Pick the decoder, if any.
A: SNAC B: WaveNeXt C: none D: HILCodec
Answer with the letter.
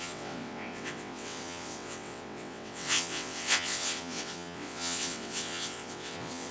B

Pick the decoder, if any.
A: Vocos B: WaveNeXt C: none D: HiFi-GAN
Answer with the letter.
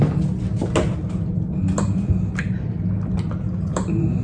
C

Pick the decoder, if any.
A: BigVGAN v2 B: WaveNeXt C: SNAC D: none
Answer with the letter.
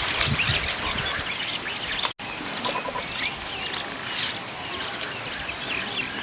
D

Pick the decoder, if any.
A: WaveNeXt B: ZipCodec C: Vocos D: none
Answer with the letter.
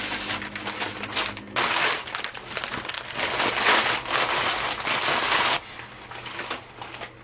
D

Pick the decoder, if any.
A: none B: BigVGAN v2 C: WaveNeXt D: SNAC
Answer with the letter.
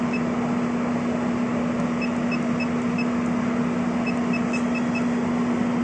A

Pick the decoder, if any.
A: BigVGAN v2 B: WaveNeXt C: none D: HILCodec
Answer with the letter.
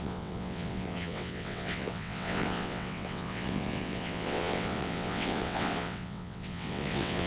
B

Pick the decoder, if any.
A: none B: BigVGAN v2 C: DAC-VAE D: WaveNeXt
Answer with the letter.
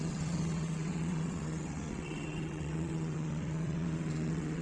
D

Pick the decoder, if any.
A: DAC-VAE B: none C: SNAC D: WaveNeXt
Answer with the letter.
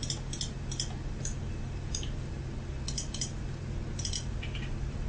B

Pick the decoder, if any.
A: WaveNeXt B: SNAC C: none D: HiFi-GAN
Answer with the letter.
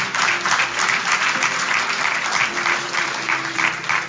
C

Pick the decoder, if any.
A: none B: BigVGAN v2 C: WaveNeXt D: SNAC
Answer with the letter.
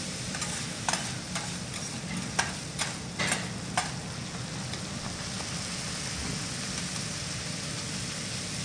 A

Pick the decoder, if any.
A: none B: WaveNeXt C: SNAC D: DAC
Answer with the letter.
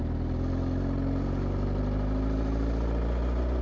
A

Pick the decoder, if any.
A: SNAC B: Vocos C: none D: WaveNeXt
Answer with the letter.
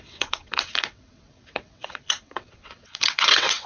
D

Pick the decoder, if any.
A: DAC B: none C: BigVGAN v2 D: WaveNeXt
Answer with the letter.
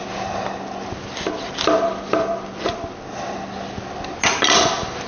B